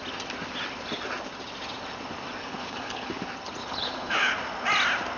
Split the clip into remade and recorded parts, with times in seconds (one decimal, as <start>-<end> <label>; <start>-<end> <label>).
0.0-2.4 recorded; 2.4-3.1 remade; 3.1-3.6 recorded; 3.6-4.3 remade; 4.3-5.2 recorded